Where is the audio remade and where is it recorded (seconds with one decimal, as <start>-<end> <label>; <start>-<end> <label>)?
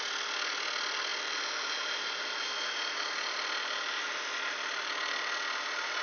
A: 0.0-6.0 recorded